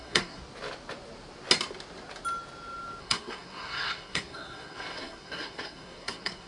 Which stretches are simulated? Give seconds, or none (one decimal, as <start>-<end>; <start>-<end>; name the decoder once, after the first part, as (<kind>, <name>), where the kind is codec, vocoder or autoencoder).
0.0-0.4 (codec, SNAC); 3.0-6.5